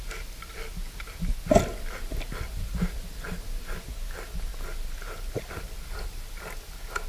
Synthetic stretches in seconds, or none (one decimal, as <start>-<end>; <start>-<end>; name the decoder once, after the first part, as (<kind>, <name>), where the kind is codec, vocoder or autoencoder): none